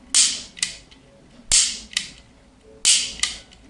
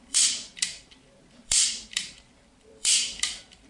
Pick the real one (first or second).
first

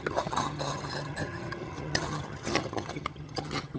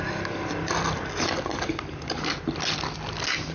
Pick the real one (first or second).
second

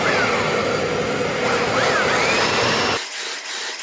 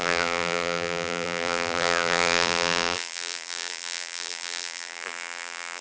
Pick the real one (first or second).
first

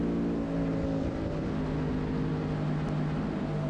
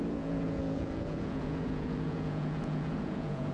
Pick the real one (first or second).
first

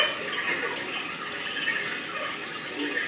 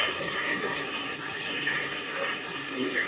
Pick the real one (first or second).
first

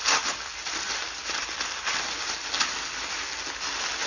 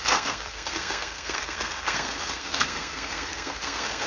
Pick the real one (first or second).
first